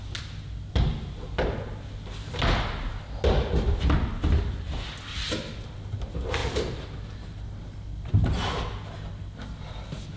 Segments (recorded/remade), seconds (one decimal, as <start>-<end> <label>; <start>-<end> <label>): 0.0-10.2 recorded